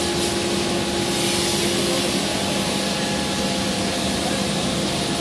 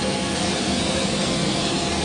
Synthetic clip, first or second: second